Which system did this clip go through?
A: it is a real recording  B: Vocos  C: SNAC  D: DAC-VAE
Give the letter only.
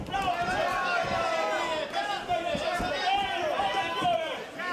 A